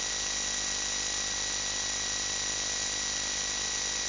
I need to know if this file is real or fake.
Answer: real